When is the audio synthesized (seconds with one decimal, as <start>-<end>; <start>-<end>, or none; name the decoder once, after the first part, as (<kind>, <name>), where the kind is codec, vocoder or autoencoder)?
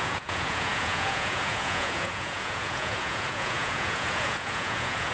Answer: 0.0-5.1 (vocoder, Vocos)